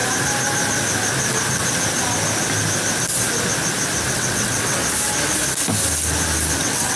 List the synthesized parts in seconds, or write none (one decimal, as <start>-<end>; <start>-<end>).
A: 4.1-4.8; 6.6-7.0